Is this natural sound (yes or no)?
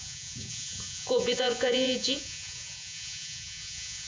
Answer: no